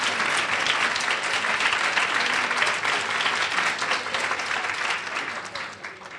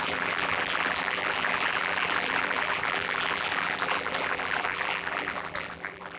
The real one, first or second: first